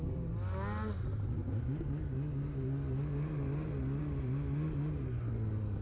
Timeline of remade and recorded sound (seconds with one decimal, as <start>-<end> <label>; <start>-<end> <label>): 0.0-5.8 recorded